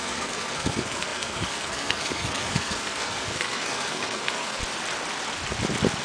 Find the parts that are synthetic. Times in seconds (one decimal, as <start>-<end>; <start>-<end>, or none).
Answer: 0.0-4.6